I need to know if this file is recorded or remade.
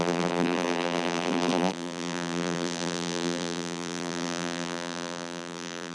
remade